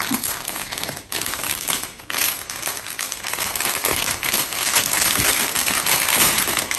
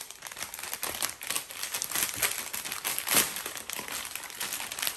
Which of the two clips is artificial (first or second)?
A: first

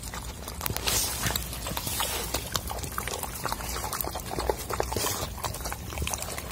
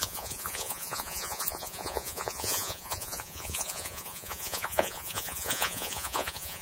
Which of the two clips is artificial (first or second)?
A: second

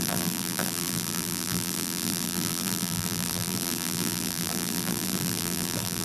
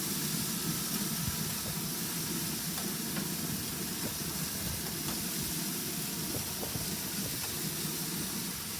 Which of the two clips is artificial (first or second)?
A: first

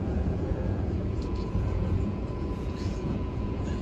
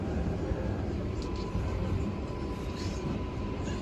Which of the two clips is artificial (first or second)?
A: first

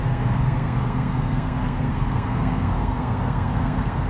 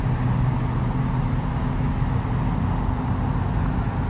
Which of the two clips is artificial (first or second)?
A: first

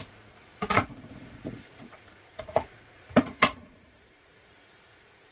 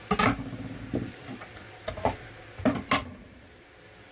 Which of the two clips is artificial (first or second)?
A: first